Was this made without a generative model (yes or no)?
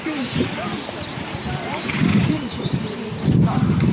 no